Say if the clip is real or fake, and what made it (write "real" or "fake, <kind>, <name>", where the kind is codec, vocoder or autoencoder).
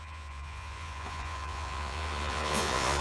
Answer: fake, vocoder, Vocos